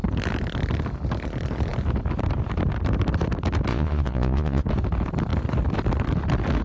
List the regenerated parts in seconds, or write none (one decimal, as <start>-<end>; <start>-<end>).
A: 3.7-4.6